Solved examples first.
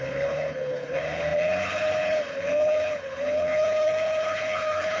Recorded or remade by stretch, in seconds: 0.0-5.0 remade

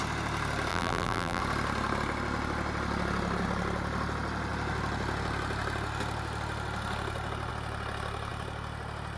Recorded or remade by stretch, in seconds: 0.0-0.7 recorded; 0.7-1.4 remade; 1.4-9.2 recorded

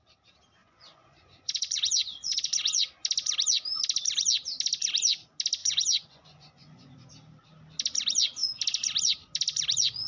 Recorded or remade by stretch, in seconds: 0.0-0.6 recorded; 0.6-2.9 remade; 2.9-5.6 recorded; 5.6-7.1 remade; 7.1-10.1 recorded

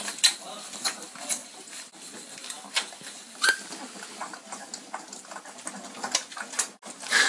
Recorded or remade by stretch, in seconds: 0.0-7.3 recorded